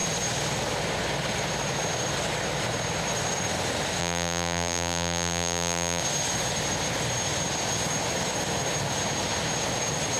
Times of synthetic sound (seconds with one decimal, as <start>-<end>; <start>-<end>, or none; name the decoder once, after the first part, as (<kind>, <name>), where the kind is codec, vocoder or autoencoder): 4.0-6.0 (vocoder, BigVGAN v2)